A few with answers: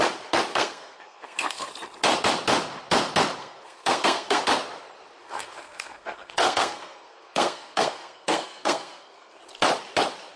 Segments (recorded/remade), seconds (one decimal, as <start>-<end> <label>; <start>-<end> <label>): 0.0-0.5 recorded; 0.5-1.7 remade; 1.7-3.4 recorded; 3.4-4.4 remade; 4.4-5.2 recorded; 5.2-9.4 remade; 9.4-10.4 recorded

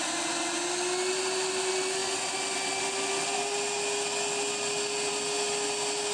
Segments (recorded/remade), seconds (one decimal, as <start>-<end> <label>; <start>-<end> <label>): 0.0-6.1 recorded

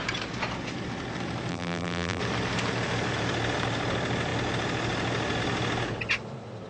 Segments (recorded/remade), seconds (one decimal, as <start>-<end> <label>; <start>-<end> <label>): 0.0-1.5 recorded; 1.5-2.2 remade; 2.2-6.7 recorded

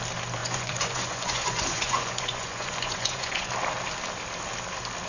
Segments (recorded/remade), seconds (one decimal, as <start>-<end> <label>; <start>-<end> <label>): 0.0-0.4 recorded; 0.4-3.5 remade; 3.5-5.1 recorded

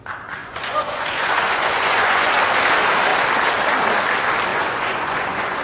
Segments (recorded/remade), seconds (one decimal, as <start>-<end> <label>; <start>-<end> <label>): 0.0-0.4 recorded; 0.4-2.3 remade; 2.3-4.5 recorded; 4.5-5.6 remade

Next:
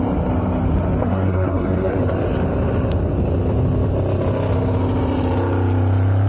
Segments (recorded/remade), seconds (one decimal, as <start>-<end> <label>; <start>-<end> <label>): 0.0-1.0 recorded; 1.0-2.0 remade; 2.0-6.3 recorded

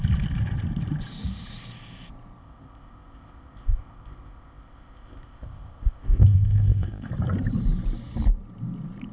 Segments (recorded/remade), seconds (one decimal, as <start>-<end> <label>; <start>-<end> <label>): 0.0-2.4 recorded; 2.4-7.1 remade; 7.1-9.1 recorded